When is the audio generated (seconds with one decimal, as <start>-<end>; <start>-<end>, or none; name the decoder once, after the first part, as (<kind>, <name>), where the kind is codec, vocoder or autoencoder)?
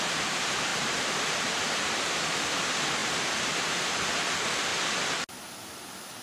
0.7-1.4 (vocoder, BigVGAN v2); 3.0-3.9